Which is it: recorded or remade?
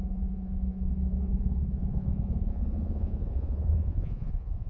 remade